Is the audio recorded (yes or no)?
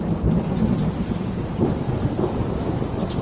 yes